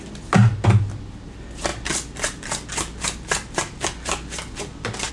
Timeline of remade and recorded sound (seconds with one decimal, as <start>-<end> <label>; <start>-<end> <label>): 0.0-5.1 recorded